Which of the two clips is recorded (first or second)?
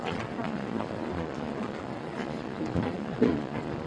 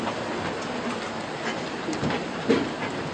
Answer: second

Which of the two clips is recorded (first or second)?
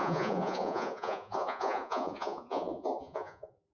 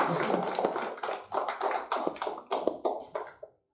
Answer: second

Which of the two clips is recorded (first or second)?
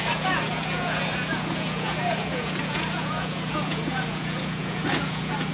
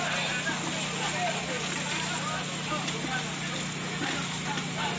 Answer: second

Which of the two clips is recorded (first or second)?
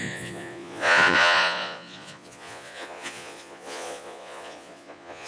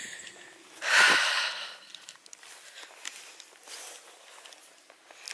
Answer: second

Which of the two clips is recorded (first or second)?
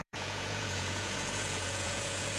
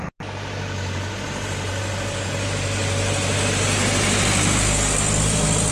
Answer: second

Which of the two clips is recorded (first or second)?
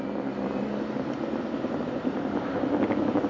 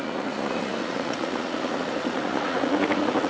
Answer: first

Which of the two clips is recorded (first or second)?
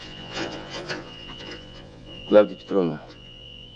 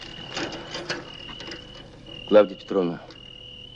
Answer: second